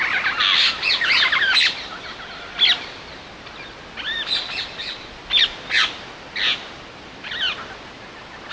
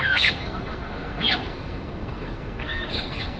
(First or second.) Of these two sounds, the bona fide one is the first